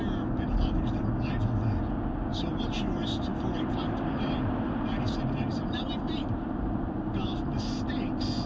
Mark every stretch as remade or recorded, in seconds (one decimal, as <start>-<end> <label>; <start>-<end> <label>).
0.0-2.3 recorded; 2.3-7.4 remade; 7.4-8.5 recorded